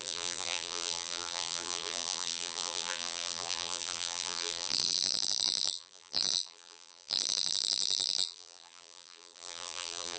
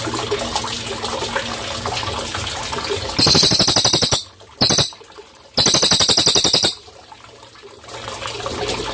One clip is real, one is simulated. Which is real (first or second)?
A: second